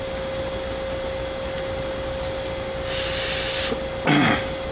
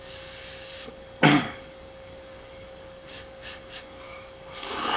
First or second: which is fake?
second